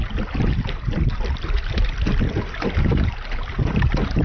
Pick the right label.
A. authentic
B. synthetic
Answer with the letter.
A